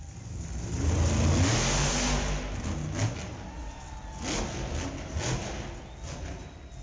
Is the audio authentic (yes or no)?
yes